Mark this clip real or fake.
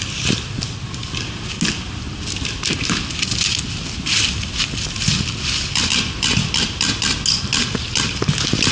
real